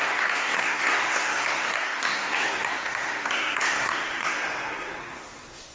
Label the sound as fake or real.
fake